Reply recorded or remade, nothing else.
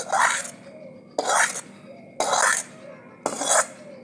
recorded